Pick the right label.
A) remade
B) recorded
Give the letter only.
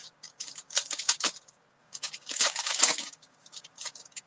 A